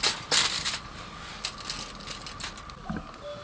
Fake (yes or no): no